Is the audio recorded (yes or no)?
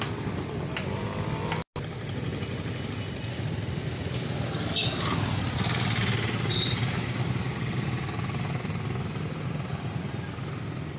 yes